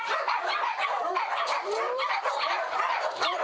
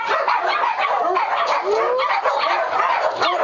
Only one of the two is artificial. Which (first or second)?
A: first